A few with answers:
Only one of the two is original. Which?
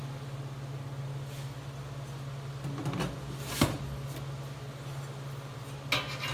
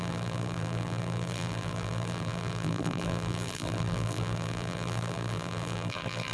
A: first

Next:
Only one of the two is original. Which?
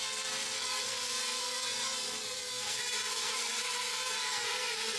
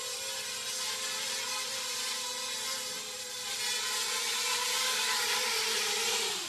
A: second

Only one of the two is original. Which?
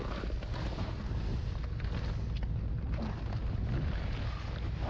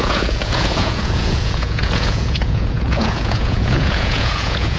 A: first